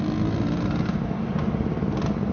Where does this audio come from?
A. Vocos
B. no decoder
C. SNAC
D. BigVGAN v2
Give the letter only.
B